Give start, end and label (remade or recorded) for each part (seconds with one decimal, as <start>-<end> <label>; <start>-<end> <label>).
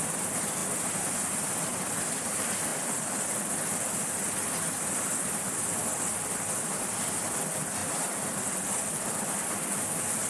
0.0-7.8 recorded; 7.8-8.3 remade; 8.3-10.3 recorded